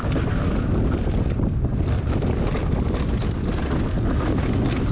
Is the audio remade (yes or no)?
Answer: no